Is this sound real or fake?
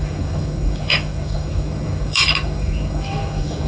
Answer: fake